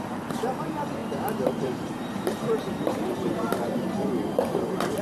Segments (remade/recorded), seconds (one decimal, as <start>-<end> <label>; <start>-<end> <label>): 0.0-1.0 remade; 1.0-1.5 recorded; 1.5-5.0 remade